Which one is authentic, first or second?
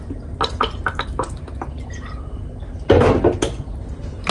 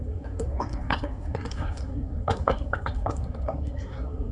first